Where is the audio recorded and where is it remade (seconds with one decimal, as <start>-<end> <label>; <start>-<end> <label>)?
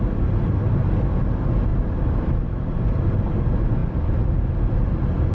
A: 0.0-5.3 recorded